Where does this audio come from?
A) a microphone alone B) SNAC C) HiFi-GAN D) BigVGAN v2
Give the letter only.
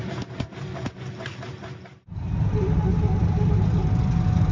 A